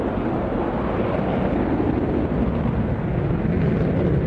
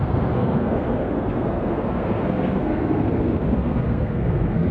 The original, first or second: first